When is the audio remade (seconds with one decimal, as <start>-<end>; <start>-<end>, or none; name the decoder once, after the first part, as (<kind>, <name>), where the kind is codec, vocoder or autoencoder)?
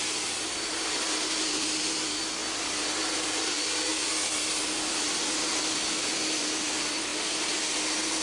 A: none